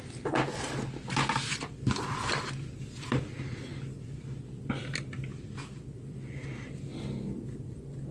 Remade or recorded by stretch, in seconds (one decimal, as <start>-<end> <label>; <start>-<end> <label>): 0.0-8.1 recorded